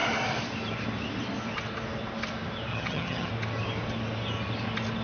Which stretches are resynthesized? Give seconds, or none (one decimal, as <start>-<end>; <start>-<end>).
2.7-3.3